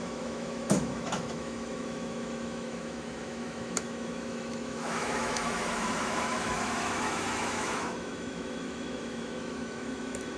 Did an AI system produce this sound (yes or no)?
yes